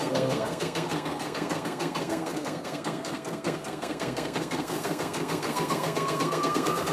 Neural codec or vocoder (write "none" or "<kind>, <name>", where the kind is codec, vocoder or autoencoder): codec, SNAC